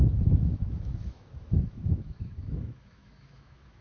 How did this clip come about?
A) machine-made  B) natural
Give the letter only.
A